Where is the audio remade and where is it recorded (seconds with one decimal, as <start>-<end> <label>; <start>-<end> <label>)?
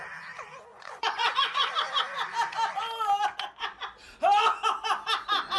0.0-0.7 recorded; 0.7-1.7 remade; 1.7-5.6 recorded